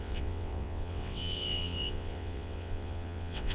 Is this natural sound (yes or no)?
no